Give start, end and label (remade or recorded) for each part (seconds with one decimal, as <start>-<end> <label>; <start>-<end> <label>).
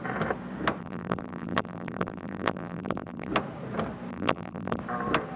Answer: 0.0-0.8 recorded; 0.8-3.3 remade; 3.3-4.1 recorded; 4.1-4.8 remade; 4.8-5.4 recorded